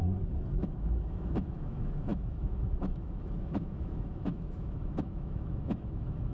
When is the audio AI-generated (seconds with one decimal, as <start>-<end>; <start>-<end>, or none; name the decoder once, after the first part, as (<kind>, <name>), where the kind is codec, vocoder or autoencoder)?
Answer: 0.6-6.3 (autoencoder, DAC-VAE)